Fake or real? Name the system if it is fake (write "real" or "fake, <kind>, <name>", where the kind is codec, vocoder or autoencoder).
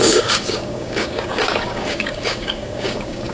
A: fake, codec, DAC